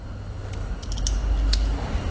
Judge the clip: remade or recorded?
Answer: recorded